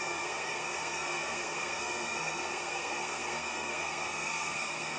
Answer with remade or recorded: remade